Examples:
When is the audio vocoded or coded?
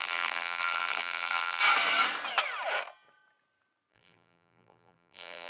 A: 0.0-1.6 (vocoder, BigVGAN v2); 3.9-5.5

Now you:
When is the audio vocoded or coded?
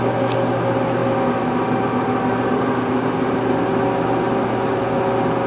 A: none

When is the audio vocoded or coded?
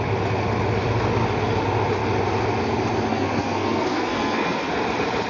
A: 3.1-4.7 (codec, SNAC)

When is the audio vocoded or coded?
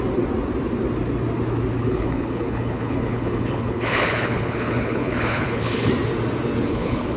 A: 1.8-5.9 (codec, HILCodec); 6.7-7.2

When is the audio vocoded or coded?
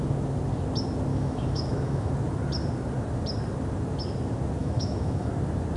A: 1.1-2.1 (autoencoder, DAC-VAE); 4.6-5.3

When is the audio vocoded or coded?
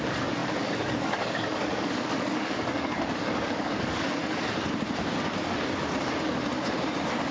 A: 0.0-4.2 (codec, DAC)